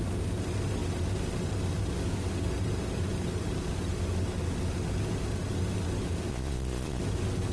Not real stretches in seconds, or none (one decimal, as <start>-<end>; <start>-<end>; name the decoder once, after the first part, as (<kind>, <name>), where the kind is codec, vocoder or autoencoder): 6.3-7.0 (vocoder, Vocos)